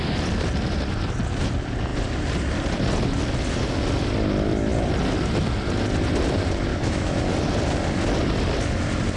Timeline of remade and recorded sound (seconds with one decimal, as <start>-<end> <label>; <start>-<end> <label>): 0.0-6.7 recorded; 6.7-7.2 remade; 7.2-9.2 recorded